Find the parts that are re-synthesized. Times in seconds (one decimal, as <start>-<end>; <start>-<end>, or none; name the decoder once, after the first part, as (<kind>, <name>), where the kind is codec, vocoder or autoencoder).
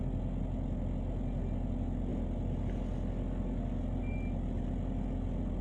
none